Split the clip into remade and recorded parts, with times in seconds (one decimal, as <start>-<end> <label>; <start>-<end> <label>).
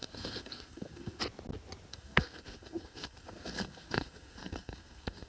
0.0-1.2 remade; 1.2-1.9 recorded; 1.9-5.3 remade